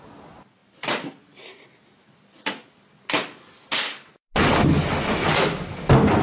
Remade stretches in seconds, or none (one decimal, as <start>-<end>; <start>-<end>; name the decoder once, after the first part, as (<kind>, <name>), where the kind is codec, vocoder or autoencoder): 0.6-2.8 (vocoder, BigVGAN v2)

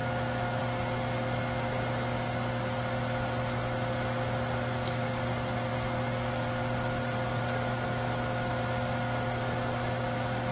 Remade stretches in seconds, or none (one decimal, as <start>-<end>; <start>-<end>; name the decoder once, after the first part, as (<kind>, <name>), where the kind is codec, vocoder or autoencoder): 0.0-0.6 (autoencoder, DAC-VAE)

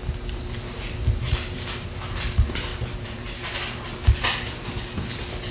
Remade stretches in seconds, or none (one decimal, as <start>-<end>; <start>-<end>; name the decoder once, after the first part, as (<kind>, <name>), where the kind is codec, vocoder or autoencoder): none